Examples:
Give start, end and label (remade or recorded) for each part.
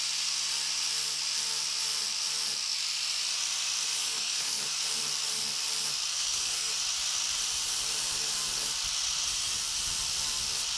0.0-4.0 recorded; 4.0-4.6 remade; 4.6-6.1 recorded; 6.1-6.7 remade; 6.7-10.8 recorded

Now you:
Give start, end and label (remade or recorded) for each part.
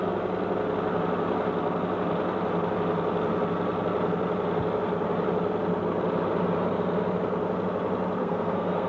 0.0-8.2 recorded; 8.2-8.9 remade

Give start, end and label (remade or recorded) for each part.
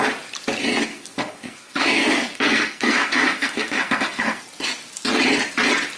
0.0-0.9 recorded; 0.9-4.4 remade; 4.4-6.0 recorded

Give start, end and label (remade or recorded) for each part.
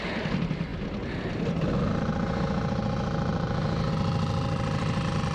0.0-5.3 recorded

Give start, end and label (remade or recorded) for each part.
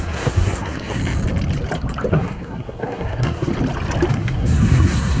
0.0-1.0 remade; 1.0-2.1 recorded; 2.1-3.5 remade; 3.5-4.1 recorded; 4.1-5.2 remade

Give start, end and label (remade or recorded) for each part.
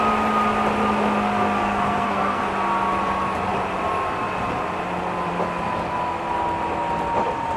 0.0-1.6 recorded; 1.6-2.4 remade; 2.4-7.6 recorded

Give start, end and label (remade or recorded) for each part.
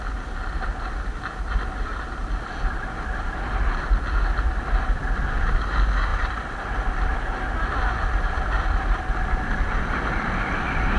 0.0-11.0 recorded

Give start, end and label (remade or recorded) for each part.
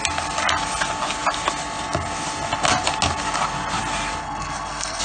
0.0-4.2 recorded; 4.2-5.0 remade